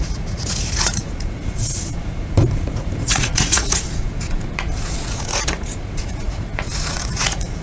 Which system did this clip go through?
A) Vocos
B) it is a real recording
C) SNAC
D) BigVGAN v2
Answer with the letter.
A